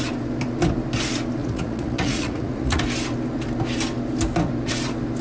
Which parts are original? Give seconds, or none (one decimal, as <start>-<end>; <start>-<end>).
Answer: 0.0-1.4; 2.8-5.2